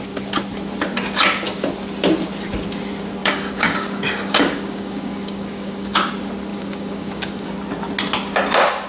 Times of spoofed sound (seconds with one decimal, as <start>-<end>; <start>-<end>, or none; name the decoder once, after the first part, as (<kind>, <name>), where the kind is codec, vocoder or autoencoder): 3.2-6.1 (codec, DAC); 6.5-7.5